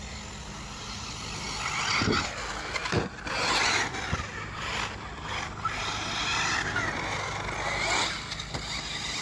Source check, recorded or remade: recorded